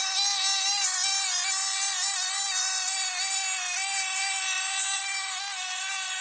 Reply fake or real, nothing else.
real